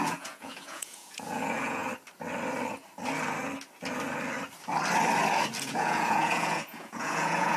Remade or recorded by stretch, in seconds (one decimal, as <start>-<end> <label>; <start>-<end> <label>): 0.0-1.8 remade; 1.8-5.6 recorded; 5.6-7.6 remade